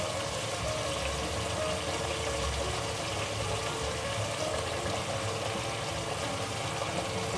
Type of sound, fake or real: real